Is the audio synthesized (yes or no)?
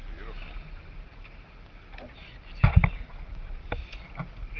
no